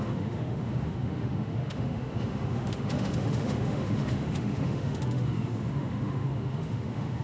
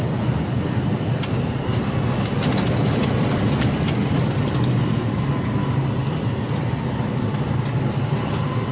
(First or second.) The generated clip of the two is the first